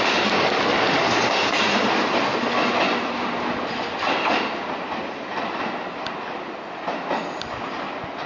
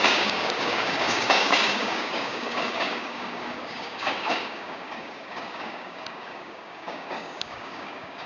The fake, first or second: second